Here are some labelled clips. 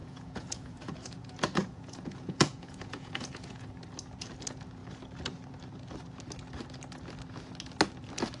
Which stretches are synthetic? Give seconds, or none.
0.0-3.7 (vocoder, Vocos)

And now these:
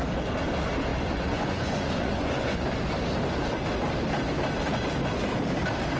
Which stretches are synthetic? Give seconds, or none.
0.9-2.9 (vocoder, Vocos)

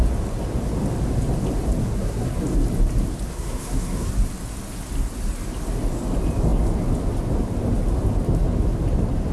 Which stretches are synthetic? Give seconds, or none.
1.8-2.4 (codec, SNAC); 3.3-4.1